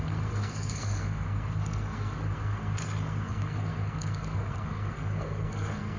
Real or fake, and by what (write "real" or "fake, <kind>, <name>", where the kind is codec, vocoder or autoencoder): fake, codec, SNAC